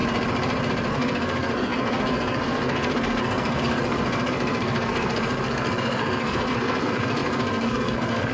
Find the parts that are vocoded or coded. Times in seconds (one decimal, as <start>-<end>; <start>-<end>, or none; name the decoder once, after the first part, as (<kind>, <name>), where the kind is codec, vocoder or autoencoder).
0.9-8.3 (codec, SNAC)